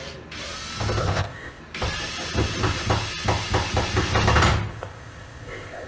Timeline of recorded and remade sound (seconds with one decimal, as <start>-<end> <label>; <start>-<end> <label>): 0.0-1.0 recorded; 1.0-1.6 remade; 1.6-4.7 recorded; 4.7-5.9 remade